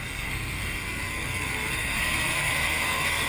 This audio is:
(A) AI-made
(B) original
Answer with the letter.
A